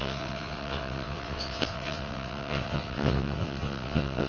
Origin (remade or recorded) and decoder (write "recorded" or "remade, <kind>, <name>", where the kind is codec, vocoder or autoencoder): remade, vocoder, WaveNeXt